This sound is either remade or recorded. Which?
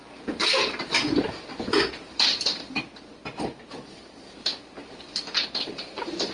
recorded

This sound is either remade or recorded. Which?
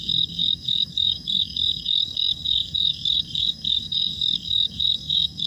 remade